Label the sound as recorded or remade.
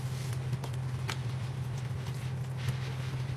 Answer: recorded